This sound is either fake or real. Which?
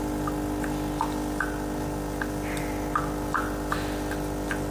real